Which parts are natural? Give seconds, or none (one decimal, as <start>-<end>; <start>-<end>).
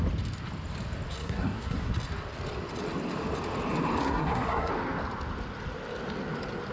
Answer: 0.0-1.2; 1.9-4.0; 4.7-6.7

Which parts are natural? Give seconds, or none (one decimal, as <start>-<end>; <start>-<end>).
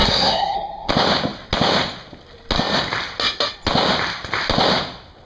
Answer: 0.9-5.2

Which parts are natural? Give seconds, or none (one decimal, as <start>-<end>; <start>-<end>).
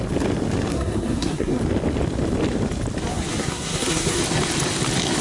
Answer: 0.0-0.7; 1.6-3.1; 4.2-5.2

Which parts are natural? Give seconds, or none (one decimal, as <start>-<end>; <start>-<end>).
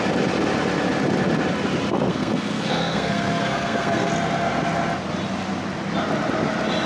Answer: 0.0-2.1; 4.1-6.9